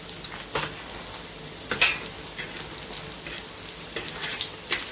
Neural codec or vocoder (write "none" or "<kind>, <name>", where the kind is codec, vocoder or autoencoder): none